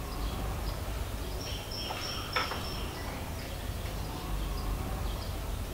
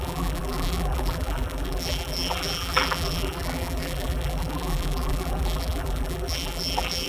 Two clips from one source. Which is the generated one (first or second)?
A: second